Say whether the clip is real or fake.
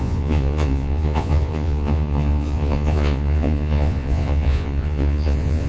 fake